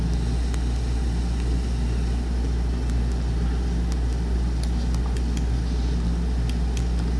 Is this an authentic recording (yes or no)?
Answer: yes